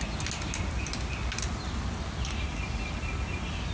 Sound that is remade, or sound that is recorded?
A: recorded